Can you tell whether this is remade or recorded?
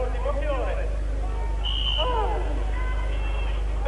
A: recorded